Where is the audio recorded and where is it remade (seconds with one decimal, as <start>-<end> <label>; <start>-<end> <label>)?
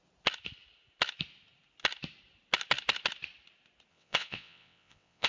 0.0-3.9 recorded; 3.9-5.3 remade